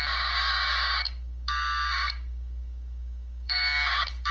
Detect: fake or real fake